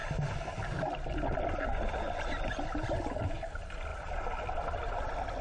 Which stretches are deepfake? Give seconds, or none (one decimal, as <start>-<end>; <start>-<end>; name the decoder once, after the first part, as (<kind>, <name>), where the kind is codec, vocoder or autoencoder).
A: none